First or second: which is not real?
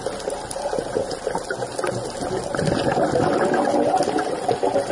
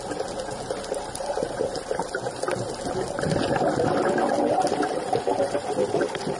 second